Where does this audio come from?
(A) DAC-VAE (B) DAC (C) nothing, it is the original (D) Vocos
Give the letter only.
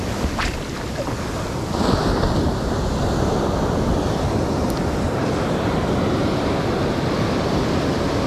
C